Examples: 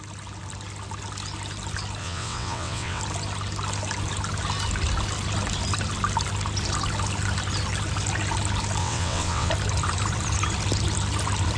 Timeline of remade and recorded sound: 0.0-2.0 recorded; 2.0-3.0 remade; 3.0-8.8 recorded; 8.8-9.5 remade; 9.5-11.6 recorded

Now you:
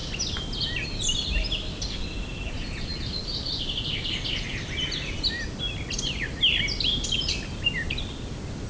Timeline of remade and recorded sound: 0.0-8.7 recorded

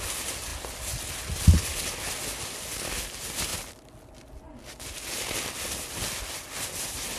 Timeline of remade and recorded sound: 0.0-7.2 recorded

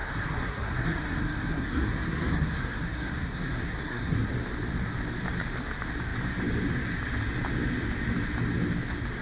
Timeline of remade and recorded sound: 0.0-4.3 remade; 4.3-9.2 recorded

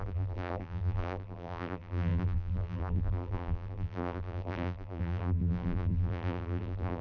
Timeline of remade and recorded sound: 0.0-7.0 remade